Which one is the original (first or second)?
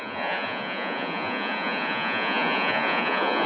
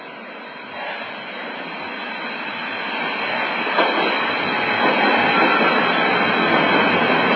second